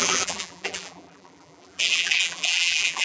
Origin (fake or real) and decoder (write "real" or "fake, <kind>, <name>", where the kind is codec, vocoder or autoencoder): fake, vocoder, BigVGAN v2